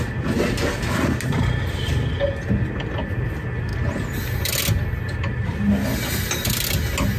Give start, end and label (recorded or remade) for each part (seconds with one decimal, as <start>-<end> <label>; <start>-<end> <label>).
0.0-7.2 recorded